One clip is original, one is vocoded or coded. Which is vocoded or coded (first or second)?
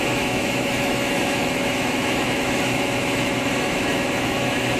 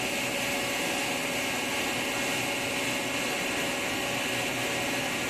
first